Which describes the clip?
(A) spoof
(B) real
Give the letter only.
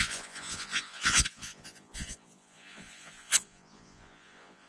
A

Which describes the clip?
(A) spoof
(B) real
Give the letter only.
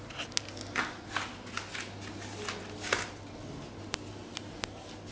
B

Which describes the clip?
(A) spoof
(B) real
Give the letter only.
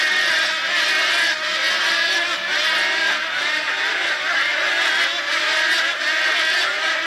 B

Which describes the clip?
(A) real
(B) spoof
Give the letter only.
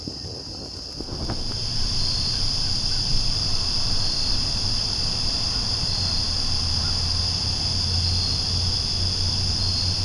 A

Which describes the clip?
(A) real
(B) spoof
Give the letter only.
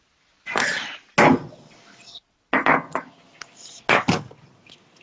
A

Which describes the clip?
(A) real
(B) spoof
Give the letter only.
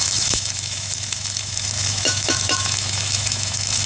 B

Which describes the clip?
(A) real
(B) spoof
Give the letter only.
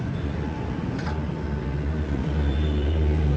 B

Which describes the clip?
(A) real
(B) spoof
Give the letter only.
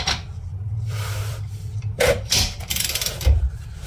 B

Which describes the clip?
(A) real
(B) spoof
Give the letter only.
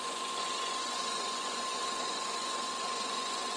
B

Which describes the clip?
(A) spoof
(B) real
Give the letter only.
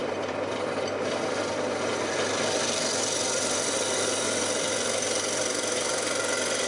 A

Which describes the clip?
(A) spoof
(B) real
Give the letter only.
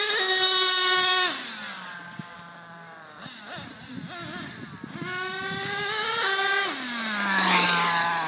B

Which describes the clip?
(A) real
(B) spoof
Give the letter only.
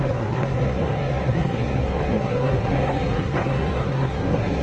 B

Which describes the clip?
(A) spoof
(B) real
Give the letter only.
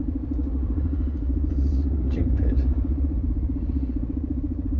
A